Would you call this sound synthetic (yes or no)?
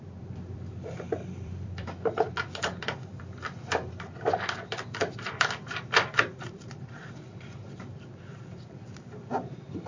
yes